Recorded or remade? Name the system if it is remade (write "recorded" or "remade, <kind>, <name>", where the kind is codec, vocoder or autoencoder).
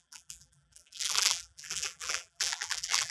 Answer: remade, vocoder, BigVGAN v2